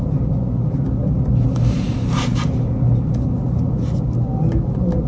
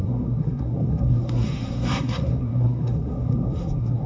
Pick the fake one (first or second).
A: second